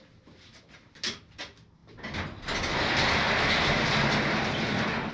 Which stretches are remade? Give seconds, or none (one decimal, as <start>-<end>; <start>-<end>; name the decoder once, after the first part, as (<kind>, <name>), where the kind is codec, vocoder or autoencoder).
none